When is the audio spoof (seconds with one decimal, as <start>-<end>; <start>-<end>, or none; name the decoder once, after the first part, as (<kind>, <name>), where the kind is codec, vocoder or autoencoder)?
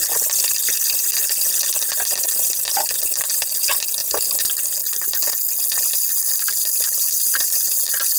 4.0-4.5 (vocoder, BigVGAN v2)